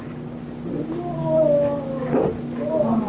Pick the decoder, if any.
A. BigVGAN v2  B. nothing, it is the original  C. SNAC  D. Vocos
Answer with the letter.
B